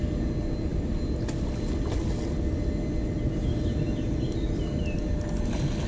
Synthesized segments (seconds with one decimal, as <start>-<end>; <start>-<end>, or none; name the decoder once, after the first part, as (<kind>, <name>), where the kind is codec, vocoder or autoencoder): none